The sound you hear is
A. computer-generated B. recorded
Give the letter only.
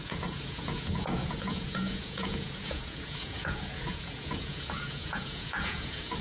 A